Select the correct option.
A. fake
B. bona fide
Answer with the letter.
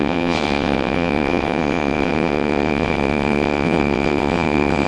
A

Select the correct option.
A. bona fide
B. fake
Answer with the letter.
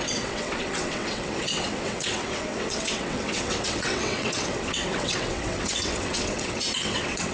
B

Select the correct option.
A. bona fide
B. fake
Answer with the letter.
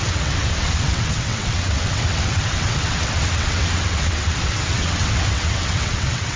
B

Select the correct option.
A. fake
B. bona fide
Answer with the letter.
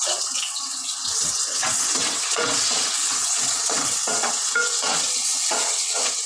A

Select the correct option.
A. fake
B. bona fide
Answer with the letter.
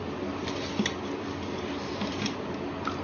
B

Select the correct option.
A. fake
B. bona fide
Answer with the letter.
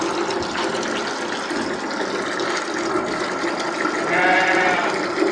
B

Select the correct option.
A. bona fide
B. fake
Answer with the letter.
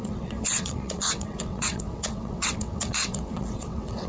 B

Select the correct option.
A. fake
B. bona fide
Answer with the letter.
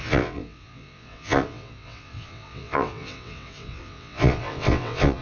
A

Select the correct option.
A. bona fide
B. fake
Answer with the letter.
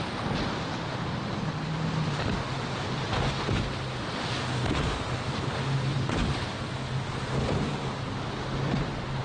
A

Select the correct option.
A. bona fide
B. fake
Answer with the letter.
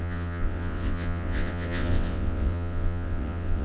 B